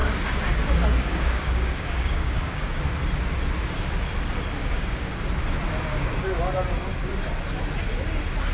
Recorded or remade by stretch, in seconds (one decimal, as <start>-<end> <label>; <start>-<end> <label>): 0.0-2.8 remade; 2.8-4.6 recorded; 4.6-5.1 remade; 5.1-5.9 recorded; 5.9-6.4 remade; 6.4-8.5 recorded